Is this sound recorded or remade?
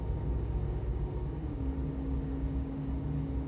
remade